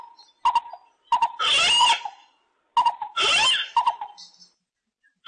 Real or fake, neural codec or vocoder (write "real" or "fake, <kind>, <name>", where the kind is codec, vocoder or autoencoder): real